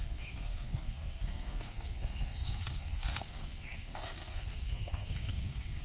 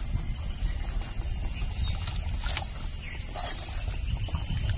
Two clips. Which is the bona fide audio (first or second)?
second